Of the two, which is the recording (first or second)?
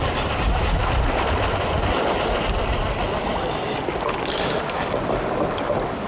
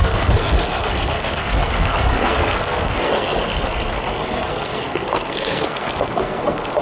first